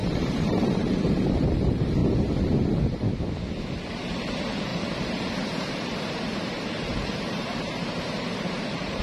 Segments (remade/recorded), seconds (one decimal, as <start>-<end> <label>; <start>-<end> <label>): 0.0-2.0 remade; 2.0-3.9 recorded; 3.9-9.0 remade

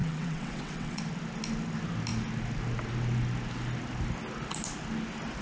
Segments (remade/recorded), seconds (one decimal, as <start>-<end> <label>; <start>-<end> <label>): 0.0-1.0 remade; 1.0-5.4 recorded

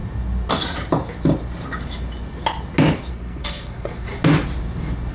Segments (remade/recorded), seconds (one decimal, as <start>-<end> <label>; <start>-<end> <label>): 0.0-3.1 recorded; 3.1-4.1 remade; 4.1-5.1 recorded

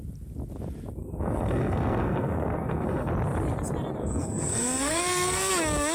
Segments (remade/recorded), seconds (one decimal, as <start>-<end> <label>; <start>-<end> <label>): 0.0-1.0 recorded; 1.0-3.1 remade; 3.1-4.0 recorded; 4.0-5.5 remade; 5.5-5.9 recorded

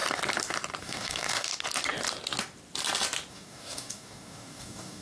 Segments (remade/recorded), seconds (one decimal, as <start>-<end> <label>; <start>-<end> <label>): 0.0-0.8 recorded; 0.8-1.5 remade; 1.5-3.3 recorded; 3.3-5.0 remade

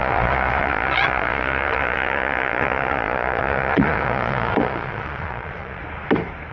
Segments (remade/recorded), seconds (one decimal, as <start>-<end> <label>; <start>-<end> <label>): 0.0-5.8 remade; 5.8-6.5 recorded